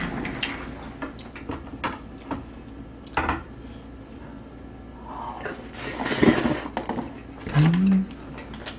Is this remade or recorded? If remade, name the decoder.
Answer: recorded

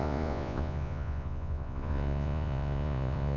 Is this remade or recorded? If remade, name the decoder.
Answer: remade, vocoder, Vocos